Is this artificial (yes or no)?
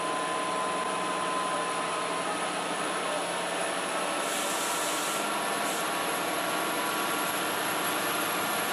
no